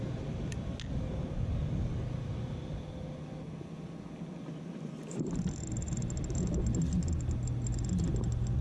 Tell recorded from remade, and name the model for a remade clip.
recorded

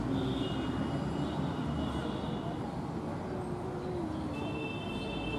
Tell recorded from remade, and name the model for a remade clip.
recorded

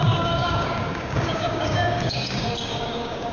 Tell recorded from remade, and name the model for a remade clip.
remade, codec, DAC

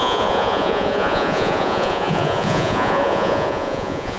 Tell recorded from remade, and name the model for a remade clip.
remade, vocoder, Vocos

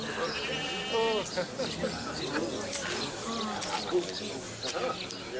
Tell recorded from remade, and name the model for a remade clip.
recorded